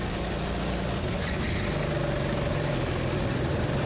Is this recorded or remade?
recorded